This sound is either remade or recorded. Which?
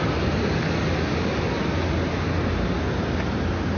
recorded